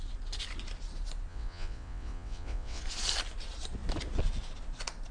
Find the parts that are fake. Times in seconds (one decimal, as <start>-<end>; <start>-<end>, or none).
1.3-2.8